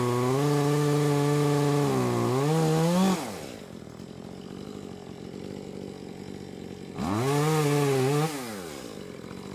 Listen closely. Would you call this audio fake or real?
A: real